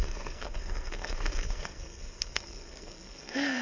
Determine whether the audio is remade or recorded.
remade